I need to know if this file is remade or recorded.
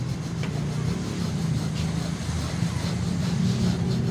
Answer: recorded